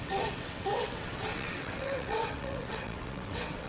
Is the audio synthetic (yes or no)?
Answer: yes